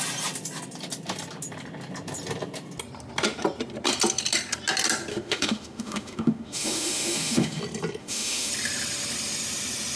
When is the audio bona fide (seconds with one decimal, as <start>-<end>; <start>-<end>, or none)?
0.0-5.1; 7.6-8.0; 8.5-10.0